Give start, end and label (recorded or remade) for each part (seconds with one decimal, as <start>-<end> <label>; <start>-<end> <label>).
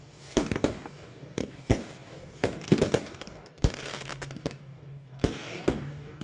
0.0-6.2 remade